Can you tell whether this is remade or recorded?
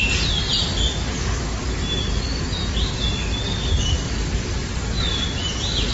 recorded